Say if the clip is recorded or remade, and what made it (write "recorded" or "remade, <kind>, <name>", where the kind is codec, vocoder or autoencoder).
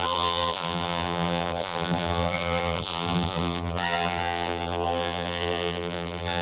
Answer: remade, vocoder, BigVGAN v2